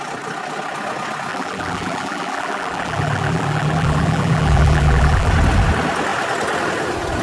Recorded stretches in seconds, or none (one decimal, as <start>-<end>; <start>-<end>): 0.0-1.3; 5.3-7.2